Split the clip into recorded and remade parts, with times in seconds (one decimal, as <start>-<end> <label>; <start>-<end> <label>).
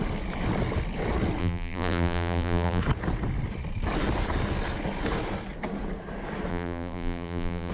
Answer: 0.0-1.4 recorded; 1.4-2.8 remade; 2.8-6.5 recorded; 6.5-7.7 remade